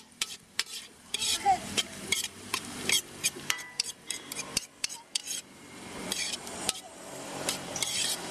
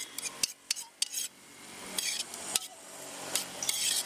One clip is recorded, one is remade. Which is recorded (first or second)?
second